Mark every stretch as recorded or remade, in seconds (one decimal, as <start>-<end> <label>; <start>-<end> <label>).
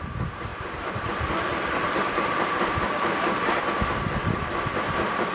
0.0-0.5 recorded; 0.5-3.6 remade; 3.6-5.3 recorded